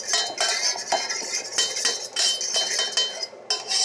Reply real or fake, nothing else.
real